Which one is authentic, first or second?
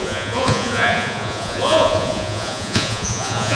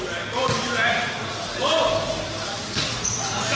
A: second